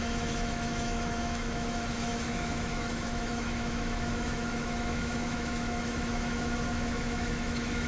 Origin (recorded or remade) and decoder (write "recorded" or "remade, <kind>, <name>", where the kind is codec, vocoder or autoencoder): remade, autoencoder, DAC-VAE